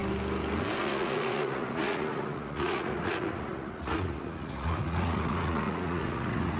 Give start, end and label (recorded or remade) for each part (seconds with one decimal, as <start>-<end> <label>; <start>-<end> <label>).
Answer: 0.0-0.8 recorded; 0.8-6.6 remade